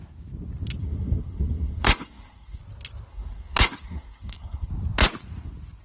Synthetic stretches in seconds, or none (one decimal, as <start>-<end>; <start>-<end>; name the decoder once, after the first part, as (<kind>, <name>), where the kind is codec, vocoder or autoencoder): 0.8-2.6 (codec, SNAC); 3.1-4.7